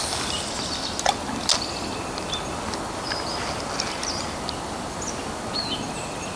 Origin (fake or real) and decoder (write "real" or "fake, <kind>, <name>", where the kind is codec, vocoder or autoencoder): real